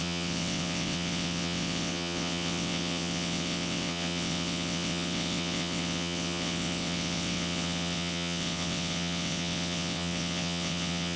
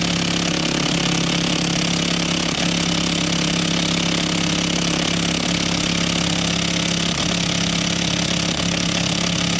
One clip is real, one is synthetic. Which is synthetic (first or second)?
first